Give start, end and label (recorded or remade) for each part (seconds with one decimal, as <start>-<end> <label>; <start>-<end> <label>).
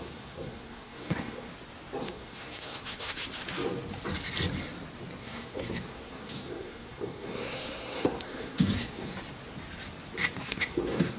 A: 0.0-1.5 remade; 1.5-2.0 recorded; 2.0-3.2 remade; 3.2-5.2 recorded; 5.2-9.1 remade; 9.1-10.4 recorded; 10.4-11.2 remade